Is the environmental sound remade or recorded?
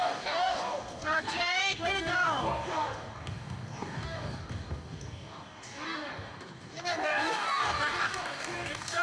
remade